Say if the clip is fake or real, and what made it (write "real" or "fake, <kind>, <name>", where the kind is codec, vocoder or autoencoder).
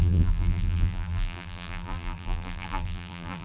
fake, vocoder, BigVGAN v2